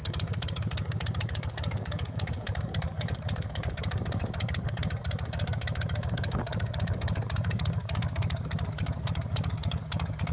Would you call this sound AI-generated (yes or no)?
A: yes